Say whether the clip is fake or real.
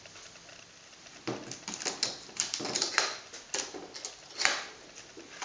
real